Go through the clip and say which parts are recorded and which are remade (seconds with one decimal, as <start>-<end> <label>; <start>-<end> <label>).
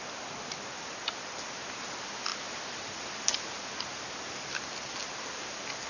0.0-5.9 recorded